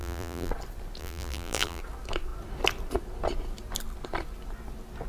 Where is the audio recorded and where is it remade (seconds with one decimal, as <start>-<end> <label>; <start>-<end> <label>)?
0.0-0.5 remade; 0.5-1.0 recorded; 1.0-1.8 remade; 1.8-5.1 recorded